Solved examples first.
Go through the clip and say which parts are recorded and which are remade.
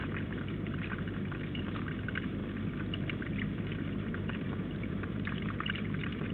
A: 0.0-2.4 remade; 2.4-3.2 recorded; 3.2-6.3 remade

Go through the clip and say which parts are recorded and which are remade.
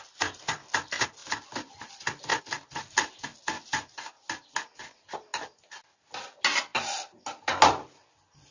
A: 0.0-8.5 recorded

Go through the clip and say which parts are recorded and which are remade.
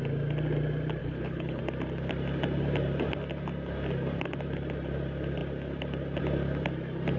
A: 0.0-1.0 recorded; 1.0-1.6 remade; 1.6-7.2 recorded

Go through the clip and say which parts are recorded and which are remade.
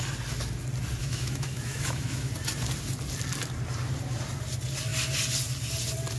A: 0.0-1.0 recorded; 1.0-2.3 remade; 2.3-6.2 recorded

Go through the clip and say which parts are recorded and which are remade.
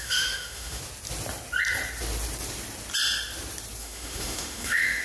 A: 0.0-0.8 remade; 0.8-3.8 recorded; 3.8-5.0 remade